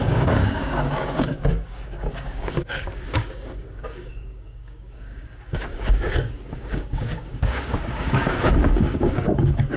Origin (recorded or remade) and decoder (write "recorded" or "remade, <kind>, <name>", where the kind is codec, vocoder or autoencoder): remade, codec, DAC